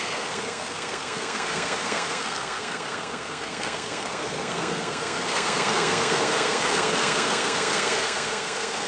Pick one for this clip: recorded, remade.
remade